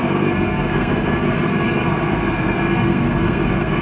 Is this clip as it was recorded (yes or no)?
no